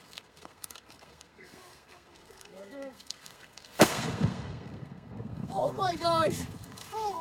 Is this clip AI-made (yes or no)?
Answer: yes